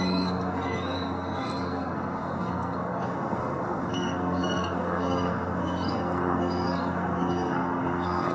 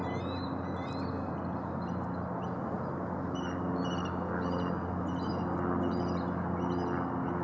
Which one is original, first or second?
second